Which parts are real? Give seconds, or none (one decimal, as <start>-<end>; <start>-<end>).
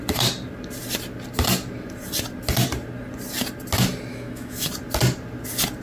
0.0-4.1; 4.7-5.8